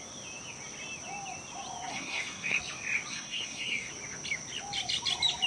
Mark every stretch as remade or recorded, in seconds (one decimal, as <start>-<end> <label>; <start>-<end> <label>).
0.0-1.9 recorded; 1.9-2.6 remade; 2.6-3.1 recorded; 3.1-3.9 remade; 3.9-5.5 recorded